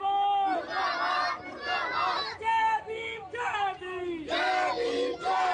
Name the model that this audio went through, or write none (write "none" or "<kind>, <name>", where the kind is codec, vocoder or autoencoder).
none